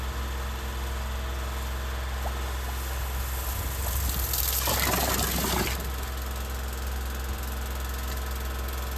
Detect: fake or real real